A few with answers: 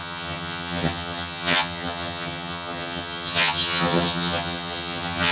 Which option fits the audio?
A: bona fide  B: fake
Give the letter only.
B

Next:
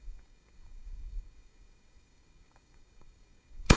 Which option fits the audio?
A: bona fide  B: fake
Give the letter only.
B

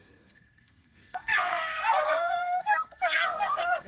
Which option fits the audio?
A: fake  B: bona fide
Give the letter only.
A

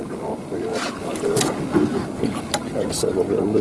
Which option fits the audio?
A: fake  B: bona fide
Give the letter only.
B